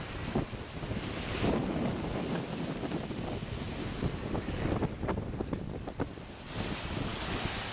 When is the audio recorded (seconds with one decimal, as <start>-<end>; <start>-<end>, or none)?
0.0-7.7